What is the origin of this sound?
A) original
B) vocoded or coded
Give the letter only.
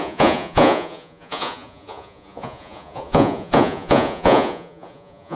B